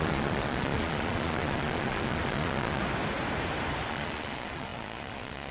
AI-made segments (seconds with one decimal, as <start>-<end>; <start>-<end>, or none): 0.0-2.8; 3.9-5.5